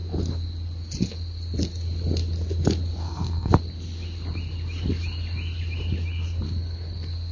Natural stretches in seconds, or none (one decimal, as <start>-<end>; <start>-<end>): 0.0-3.0; 3.5-7.3